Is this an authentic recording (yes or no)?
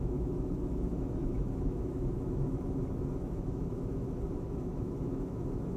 no